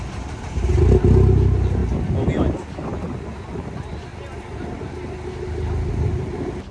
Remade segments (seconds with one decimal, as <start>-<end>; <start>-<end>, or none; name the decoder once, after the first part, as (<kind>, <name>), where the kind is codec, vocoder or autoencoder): none